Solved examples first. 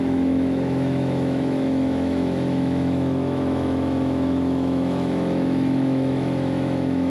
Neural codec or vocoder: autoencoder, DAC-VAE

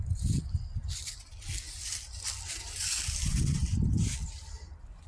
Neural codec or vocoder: none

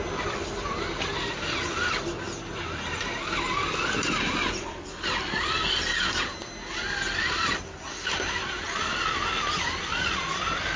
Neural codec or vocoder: none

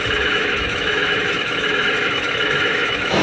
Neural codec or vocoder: autoencoder, DAC-VAE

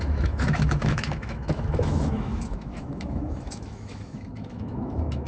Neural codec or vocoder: autoencoder, DAC-VAE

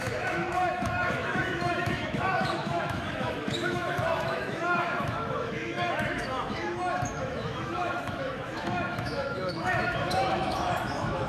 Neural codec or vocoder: autoencoder, DAC-VAE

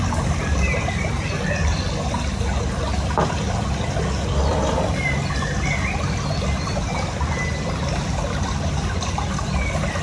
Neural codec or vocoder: none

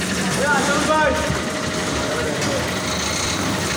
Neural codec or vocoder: none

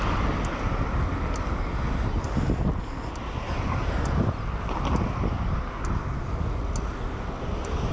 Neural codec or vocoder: none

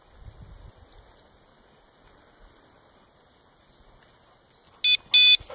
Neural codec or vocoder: none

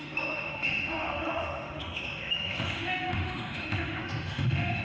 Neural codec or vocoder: autoencoder, DAC-VAE